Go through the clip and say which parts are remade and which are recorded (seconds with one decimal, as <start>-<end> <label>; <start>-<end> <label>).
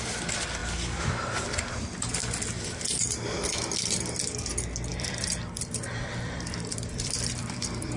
0.0-0.6 recorded; 0.6-1.5 remade; 1.5-2.2 recorded; 2.2-2.8 remade; 2.8-4.9 recorded; 4.9-8.0 remade